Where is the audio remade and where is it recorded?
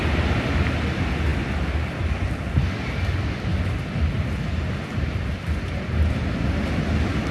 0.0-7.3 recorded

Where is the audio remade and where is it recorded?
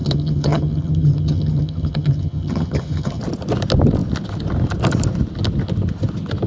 0.0-3.2 remade; 3.2-6.5 recorded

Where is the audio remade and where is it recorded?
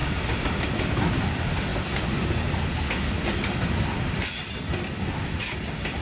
0.0-6.0 recorded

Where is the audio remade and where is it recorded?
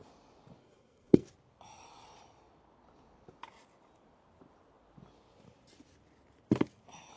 0.0-0.6 recorded; 0.6-1.3 remade; 1.3-7.2 recorded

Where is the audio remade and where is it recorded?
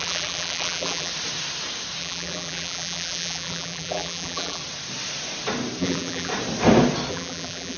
0.0-1.1 remade; 1.1-2.0 recorded; 2.0-4.6 remade; 4.6-5.8 recorded; 5.8-6.3 remade; 6.3-7.1 recorded; 7.1-7.8 remade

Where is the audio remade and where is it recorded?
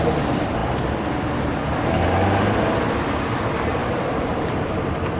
0.0-5.2 recorded